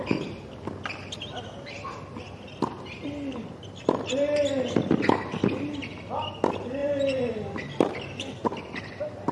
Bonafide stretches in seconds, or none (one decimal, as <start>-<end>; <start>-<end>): 0.0-9.3